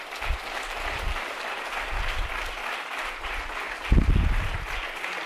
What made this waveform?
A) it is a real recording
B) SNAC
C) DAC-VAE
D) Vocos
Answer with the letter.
A